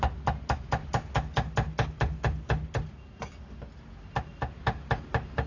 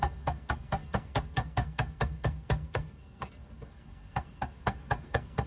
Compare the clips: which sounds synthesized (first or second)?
second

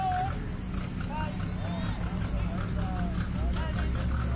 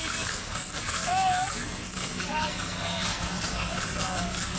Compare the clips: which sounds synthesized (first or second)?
second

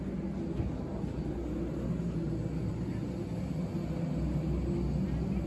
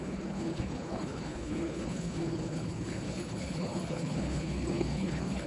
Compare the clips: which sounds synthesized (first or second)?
second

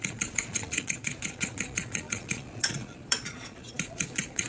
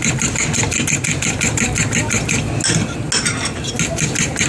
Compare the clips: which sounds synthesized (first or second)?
first